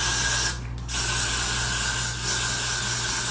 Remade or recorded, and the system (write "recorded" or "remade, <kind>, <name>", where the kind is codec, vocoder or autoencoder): recorded